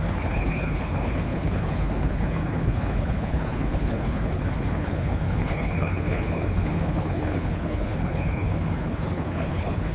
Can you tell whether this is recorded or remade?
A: remade